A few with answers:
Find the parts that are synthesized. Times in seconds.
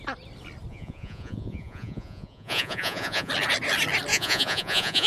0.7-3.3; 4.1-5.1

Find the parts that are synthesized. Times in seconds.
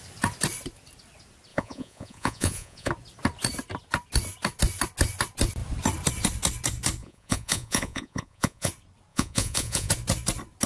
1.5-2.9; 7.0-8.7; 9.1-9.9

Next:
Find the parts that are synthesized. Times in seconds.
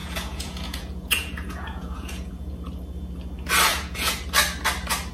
0.0-2.5; 3.7-4.2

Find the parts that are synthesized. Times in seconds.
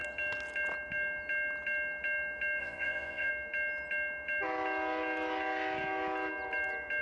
2.6-3.3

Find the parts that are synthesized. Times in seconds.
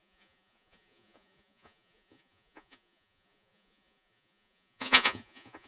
0.0-5.7